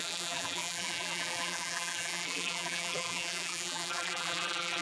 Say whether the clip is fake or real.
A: fake